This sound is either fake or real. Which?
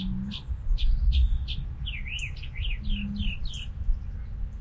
real